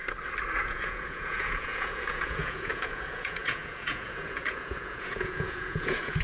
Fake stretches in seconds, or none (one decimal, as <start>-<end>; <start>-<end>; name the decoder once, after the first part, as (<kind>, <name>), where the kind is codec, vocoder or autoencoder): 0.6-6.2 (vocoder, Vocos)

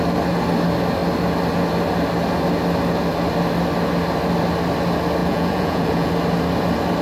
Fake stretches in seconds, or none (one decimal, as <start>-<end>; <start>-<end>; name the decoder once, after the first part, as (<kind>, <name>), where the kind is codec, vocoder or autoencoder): 5.2-6.1 (vocoder, Vocos)

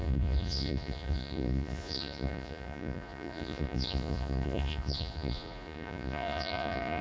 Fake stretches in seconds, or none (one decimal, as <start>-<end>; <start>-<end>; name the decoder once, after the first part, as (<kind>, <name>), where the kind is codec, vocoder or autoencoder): 0.0-7.0 (vocoder, Vocos)

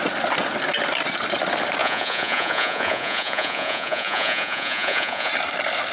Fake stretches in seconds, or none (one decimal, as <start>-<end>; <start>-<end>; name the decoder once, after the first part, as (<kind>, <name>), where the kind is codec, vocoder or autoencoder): 1.8-5.3 (vocoder, Vocos)

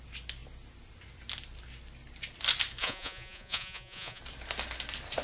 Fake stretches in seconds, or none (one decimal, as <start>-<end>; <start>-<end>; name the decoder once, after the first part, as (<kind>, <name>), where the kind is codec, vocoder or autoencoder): 2.8-4.2 (vocoder, Vocos)

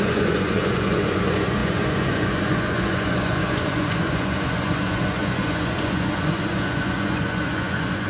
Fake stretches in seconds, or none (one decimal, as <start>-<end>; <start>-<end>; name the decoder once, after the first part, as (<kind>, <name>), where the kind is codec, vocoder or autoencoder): 0.0-8.1 (vocoder, Vocos)